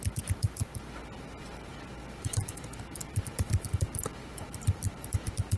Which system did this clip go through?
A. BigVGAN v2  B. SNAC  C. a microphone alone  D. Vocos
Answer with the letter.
A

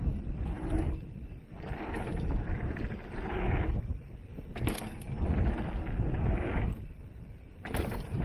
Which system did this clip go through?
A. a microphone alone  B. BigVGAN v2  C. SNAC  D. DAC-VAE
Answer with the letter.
A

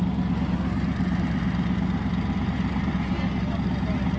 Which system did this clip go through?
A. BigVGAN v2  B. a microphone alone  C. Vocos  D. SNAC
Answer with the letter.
B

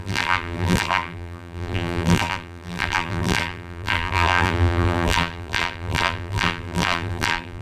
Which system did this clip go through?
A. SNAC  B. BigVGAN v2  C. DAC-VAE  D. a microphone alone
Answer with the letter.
B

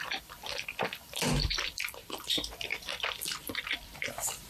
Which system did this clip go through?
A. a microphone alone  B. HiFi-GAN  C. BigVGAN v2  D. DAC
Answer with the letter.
C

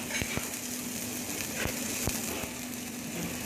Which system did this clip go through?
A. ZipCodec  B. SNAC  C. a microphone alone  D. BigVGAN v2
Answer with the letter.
C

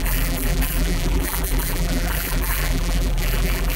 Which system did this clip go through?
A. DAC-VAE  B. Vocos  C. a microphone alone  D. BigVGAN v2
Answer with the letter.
D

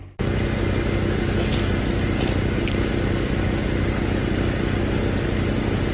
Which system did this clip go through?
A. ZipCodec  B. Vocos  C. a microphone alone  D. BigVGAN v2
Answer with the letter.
C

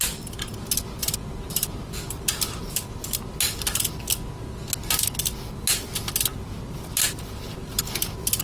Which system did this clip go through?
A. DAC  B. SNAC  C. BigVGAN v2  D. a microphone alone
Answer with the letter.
D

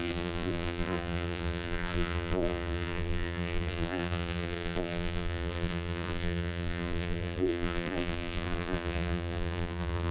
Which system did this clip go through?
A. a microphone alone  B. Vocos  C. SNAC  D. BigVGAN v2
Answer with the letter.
D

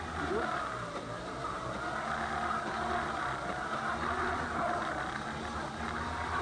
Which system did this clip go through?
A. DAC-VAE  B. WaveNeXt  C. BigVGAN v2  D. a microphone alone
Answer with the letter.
D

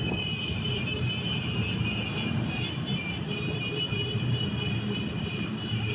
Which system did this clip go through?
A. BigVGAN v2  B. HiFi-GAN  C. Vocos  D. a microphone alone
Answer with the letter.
A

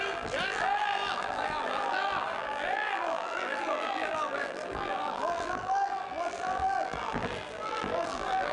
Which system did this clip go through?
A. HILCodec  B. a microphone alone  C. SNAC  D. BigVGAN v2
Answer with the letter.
D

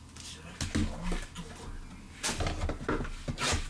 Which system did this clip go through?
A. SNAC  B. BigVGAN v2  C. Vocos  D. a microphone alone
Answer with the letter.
D